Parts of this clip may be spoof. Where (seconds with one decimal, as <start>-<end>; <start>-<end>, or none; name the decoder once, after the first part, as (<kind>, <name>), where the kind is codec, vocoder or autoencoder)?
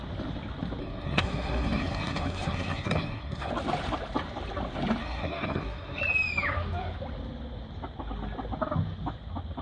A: 0.8-3.5 (codec, SNAC); 5.0-6.0